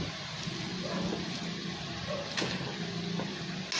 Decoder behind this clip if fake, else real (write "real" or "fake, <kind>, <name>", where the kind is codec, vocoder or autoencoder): real